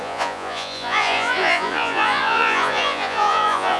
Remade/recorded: remade